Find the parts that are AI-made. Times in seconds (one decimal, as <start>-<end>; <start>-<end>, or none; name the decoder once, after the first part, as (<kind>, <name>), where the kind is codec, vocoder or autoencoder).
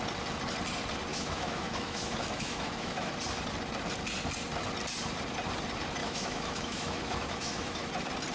1.1-3.1 (autoencoder, DAC-VAE); 6.0-7.9